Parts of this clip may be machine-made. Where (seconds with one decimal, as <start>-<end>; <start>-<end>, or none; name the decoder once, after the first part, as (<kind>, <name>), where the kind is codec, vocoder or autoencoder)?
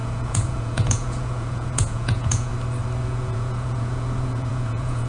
0.0-2.5 (vocoder, Vocos); 3.0-5.1